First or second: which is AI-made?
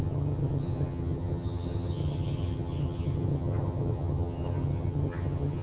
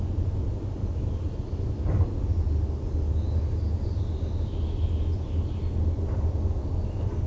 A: first